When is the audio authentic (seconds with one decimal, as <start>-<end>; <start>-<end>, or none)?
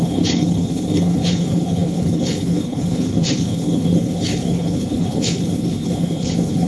none